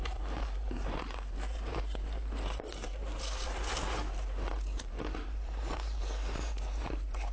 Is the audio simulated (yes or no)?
yes